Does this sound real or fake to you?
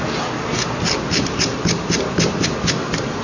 real